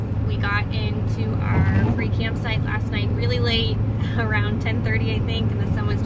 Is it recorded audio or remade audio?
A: recorded